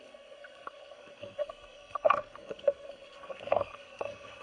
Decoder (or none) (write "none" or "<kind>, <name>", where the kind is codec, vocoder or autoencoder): codec, SNAC